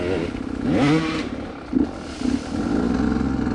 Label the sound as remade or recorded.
recorded